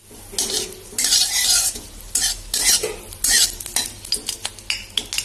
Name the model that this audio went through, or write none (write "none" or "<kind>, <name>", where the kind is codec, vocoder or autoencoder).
none